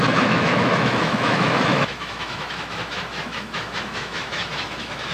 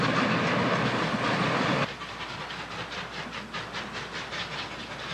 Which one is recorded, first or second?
second